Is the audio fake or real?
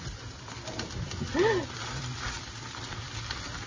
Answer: real